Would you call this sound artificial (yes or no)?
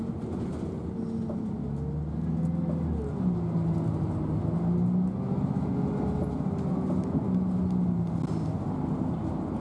no